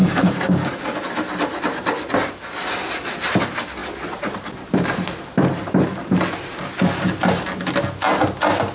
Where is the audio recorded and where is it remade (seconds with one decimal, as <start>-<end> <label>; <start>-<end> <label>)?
0.0-0.7 remade; 0.7-8.7 recorded